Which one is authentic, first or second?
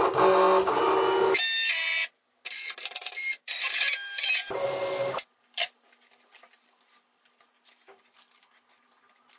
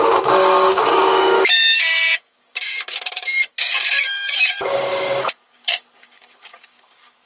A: first